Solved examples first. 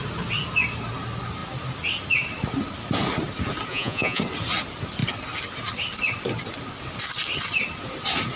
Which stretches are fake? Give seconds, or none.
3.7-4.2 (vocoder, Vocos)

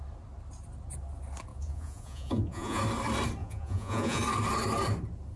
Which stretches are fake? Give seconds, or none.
1.5-2.8 (vocoder, Vocos); 3.4-4.2

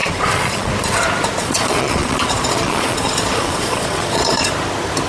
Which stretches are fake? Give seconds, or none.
0.0-0.7 (vocoder, Vocos); 1.4-4.5

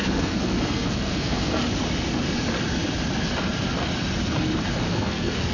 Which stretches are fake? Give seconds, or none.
0.0-1.6 (codec, SNAC); 4.9-5.5

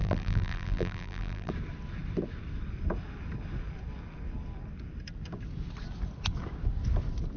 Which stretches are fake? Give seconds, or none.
0.0-1.5 (vocoder, BigVGAN v2)

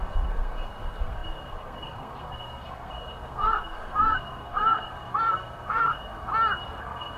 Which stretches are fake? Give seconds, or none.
0.0-6.3 (codec, SNAC); 6.8-7.2

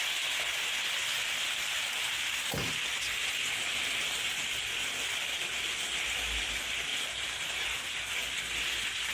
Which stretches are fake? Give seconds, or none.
6.9-7.9 (vocoder, BigVGAN v2)